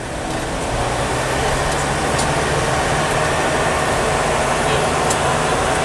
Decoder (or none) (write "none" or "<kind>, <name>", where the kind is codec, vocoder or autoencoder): none